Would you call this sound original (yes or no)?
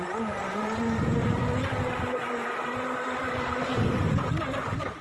yes